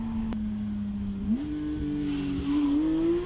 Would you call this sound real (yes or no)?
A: yes